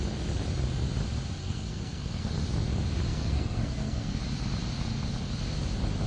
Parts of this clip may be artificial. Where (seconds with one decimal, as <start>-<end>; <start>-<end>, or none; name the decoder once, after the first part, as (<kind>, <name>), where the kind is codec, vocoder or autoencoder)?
1.4-2.3 (codec, SNAC); 3.1-4.2